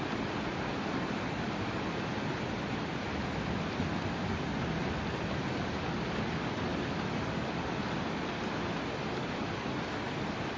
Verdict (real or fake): real